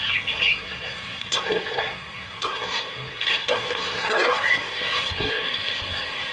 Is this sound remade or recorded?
remade